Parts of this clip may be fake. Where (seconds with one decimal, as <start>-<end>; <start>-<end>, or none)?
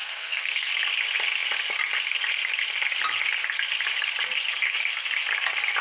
0.0-0.7